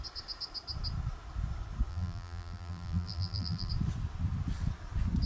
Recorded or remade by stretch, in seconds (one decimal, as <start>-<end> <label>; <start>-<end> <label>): 0.0-1.9 recorded; 1.9-3.7 remade; 3.7-5.3 recorded